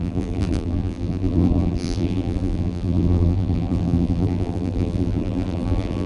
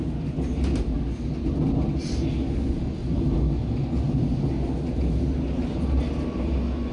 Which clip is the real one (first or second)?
second